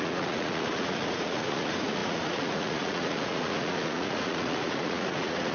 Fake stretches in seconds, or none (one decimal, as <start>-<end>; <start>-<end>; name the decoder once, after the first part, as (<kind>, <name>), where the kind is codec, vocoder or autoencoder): 0.0-5.5 (vocoder, Vocos)